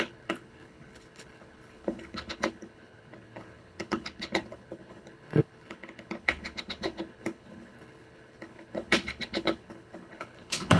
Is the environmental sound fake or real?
fake